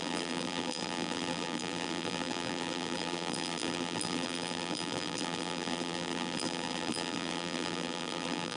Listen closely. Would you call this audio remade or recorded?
remade